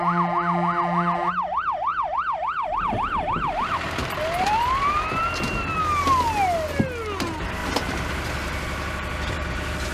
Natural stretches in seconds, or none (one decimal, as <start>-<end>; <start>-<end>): 0.0-1.9; 5.5-7.6; 9.5-9.9